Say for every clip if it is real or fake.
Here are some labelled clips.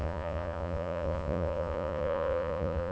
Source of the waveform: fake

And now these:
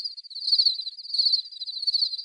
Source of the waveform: real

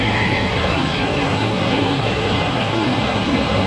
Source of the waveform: fake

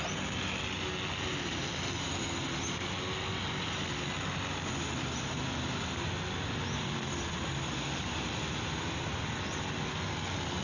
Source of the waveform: real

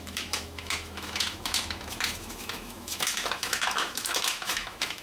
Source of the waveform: fake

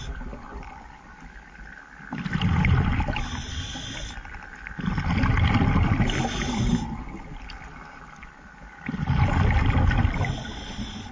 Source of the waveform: real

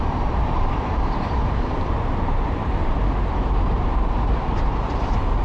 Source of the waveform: fake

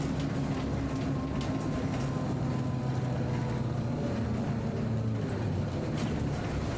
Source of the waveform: real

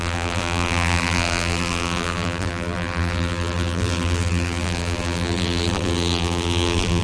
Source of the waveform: fake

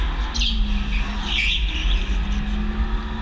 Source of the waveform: real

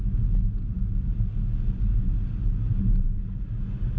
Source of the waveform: real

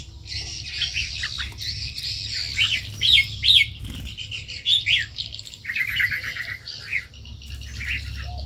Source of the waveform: real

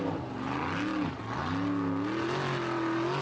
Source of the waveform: real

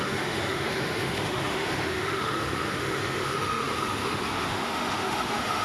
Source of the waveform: fake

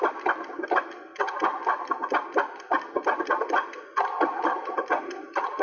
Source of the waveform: real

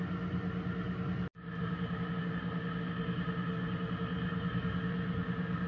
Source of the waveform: real